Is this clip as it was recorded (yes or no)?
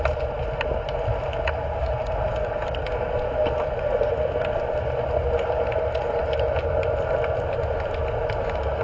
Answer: yes